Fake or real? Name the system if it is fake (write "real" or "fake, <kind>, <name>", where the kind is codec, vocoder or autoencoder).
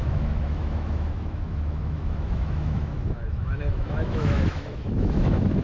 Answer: fake, autoencoder, DAC-VAE